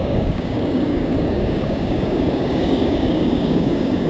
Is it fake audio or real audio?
fake